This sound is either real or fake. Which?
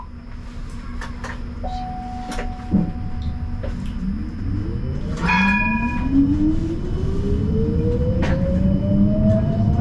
real